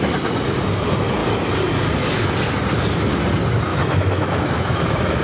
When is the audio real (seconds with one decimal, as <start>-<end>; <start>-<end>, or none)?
0.0-3.7